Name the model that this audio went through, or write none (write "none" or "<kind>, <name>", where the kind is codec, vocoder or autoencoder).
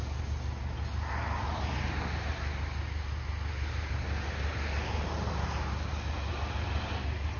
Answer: none